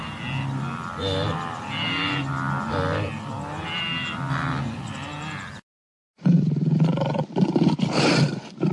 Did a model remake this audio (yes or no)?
no